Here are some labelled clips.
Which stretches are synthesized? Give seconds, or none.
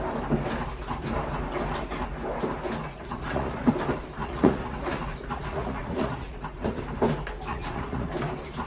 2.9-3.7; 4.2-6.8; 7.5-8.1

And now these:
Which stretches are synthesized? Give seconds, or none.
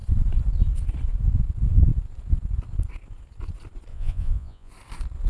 3.9-4.7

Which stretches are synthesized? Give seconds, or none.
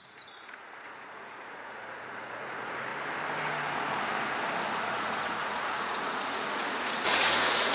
0.0-2.9; 4.8-7.7